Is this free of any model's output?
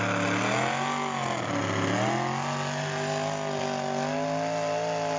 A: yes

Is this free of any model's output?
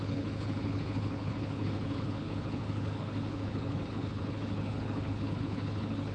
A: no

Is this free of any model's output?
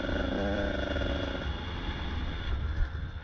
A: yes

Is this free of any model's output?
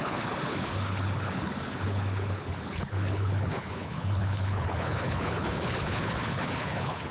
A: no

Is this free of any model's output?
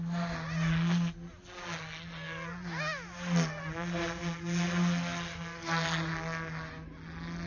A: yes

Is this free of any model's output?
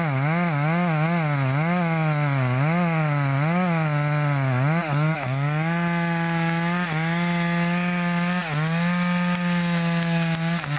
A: yes